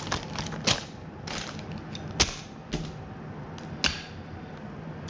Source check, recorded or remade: recorded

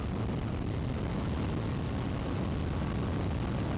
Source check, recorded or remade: recorded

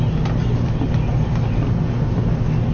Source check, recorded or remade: recorded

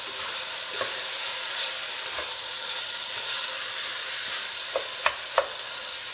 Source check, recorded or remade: remade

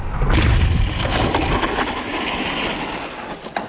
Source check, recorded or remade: recorded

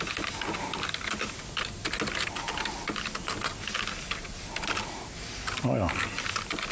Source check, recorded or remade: recorded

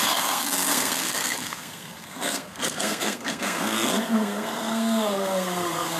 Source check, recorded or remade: remade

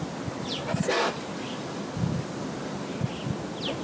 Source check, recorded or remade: recorded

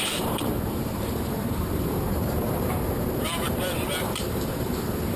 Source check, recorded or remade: remade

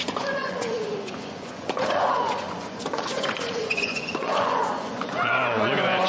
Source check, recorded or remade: remade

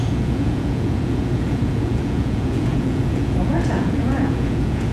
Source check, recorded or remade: remade